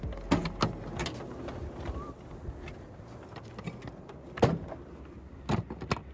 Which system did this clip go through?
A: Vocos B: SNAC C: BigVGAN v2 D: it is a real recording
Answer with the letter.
D